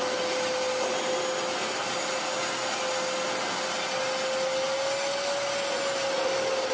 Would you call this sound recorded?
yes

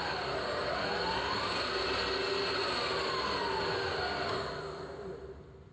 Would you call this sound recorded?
yes